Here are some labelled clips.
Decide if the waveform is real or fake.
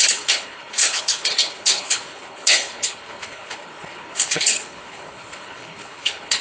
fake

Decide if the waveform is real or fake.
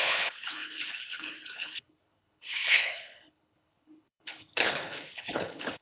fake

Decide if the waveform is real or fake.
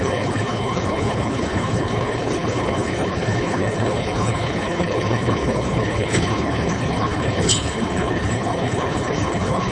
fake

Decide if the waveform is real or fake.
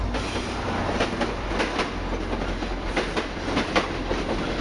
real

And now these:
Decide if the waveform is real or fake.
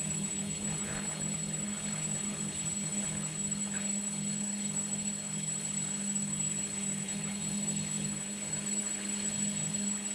fake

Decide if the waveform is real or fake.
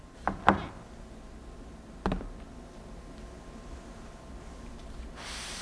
real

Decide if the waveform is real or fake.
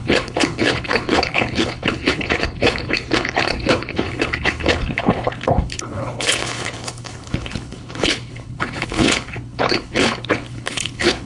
fake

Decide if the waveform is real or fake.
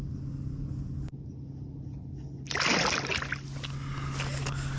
real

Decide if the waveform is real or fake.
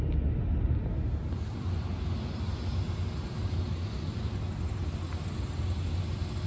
real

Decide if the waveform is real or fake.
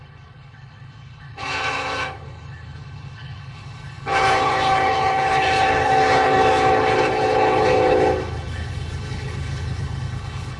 fake